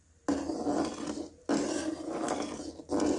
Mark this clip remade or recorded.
recorded